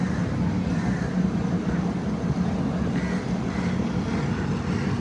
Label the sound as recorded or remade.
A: recorded